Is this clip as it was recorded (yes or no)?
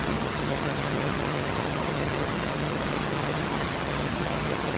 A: no